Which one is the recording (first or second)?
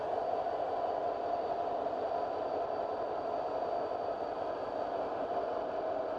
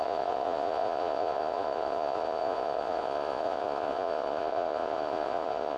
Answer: first